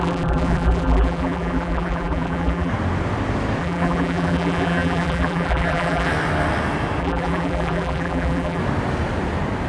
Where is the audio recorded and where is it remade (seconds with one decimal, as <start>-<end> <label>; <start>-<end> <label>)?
0.0-2.7 remade; 2.7-3.6 recorded; 3.6-6.1 remade; 6.1-7.0 recorded; 7.0-8.6 remade; 8.6-9.7 recorded